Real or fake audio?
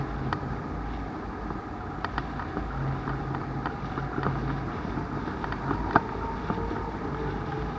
real